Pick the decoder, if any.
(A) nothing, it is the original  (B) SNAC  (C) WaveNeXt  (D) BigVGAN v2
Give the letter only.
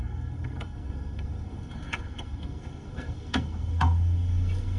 B